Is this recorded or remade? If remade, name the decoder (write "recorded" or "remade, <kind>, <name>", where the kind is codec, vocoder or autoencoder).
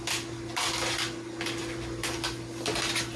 recorded